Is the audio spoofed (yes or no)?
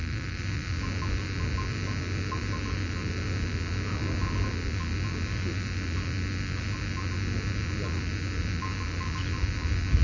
no